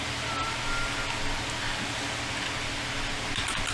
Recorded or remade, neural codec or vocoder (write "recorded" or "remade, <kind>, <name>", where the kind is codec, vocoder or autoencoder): recorded